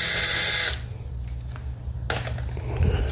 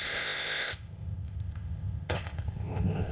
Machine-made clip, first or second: second